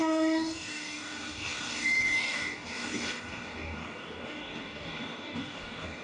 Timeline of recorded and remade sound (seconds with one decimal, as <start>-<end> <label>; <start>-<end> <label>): 0.0-6.0 remade